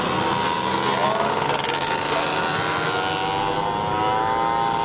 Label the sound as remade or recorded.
recorded